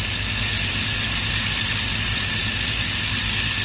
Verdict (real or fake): real